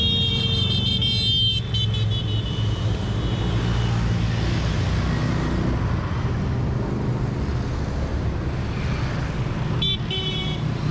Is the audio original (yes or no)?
yes